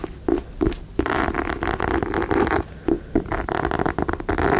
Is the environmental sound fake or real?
real